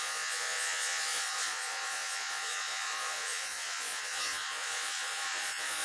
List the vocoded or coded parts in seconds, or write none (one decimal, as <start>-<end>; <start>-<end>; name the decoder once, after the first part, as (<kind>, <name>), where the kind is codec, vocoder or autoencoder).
0.0-5.8 (vocoder, Vocos)